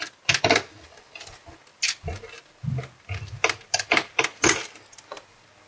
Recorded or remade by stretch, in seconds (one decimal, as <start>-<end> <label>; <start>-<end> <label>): 0.0-5.7 recorded